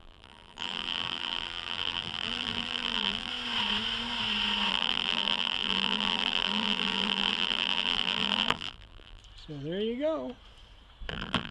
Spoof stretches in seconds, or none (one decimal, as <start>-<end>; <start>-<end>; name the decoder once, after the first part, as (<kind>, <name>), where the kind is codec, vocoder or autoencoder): 0.0-3.3 (vocoder, BigVGAN v2); 4.7-9.2; 11.1-11.5